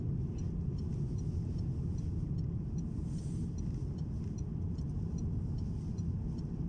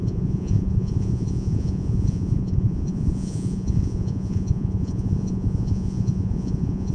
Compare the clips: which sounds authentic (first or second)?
first